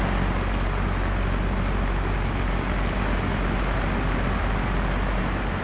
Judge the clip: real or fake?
real